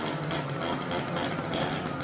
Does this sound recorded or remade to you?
recorded